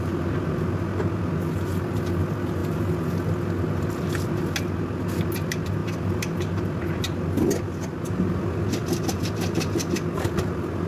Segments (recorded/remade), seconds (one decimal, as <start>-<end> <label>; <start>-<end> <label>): 0.0-10.9 recorded